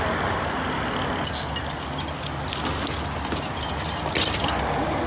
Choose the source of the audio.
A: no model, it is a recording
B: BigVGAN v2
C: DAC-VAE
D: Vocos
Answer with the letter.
A